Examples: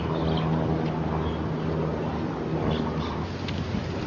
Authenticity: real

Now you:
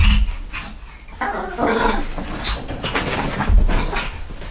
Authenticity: real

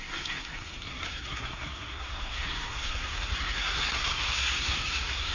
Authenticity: fake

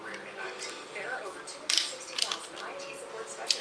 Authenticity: real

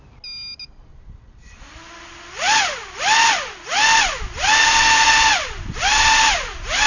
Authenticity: real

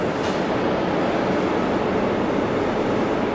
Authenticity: real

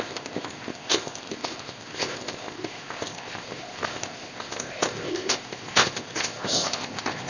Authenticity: fake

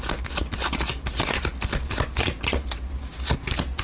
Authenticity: real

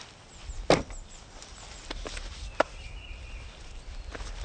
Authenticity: real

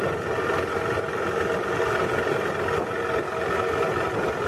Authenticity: real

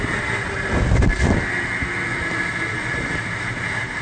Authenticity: real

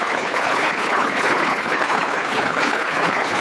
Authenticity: fake